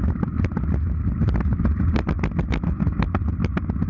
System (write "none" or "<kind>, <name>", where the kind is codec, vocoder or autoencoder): none